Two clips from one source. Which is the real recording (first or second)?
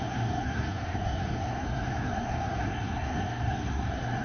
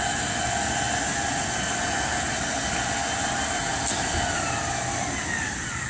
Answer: second